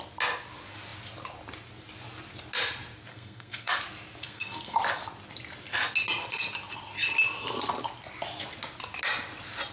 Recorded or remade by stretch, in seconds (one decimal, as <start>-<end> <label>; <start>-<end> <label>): 0.0-3.1 recorded; 3.1-3.8 remade; 3.8-4.2 recorded; 4.2-4.8 remade; 4.8-9.7 recorded

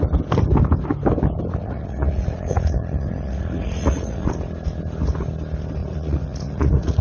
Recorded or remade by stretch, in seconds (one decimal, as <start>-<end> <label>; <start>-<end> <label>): 0.0-1.6 recorded; 1.6-4.3 remade; 4.3-5.8 recorded; 5.8-7.0 remade